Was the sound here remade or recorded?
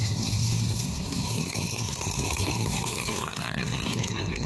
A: remade